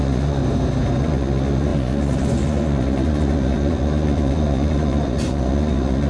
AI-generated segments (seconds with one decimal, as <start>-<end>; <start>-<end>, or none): 0.0-0.4; 1.0-6.1